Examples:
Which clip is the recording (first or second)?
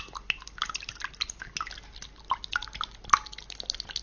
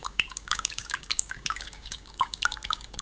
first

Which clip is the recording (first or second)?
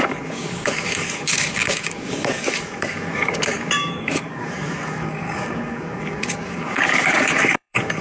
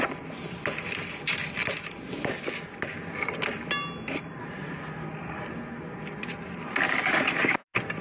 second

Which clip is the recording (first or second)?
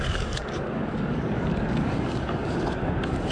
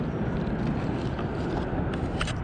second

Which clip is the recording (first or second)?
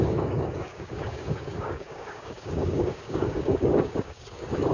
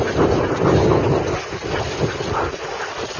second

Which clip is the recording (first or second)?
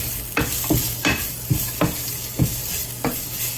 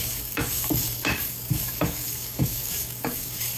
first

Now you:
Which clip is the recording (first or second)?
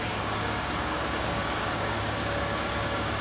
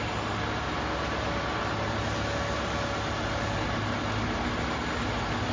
second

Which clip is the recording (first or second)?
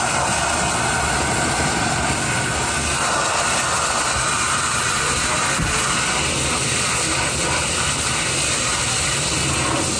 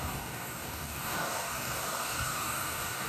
first